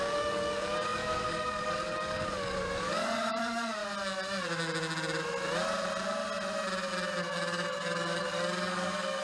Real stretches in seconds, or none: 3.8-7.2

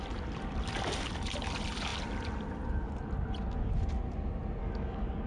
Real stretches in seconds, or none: 0.0-4.6

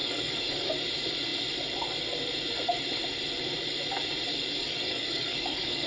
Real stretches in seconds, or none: 0.7-4.3